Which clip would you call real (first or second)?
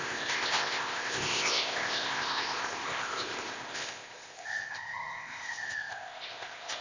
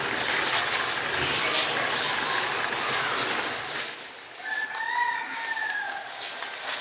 second